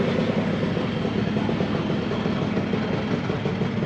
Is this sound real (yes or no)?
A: yes